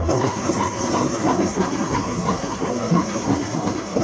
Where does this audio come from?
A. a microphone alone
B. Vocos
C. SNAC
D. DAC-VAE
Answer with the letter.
C